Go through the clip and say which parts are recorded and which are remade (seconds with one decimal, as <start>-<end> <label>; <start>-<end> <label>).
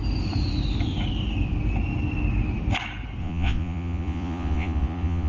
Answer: 0.0-3.2 recorded; 3.2-5.3 remade